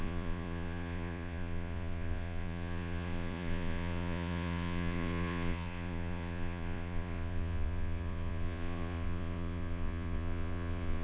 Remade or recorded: remade